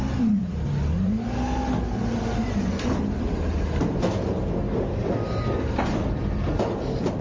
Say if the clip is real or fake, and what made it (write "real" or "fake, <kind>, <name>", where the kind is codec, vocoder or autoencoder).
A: real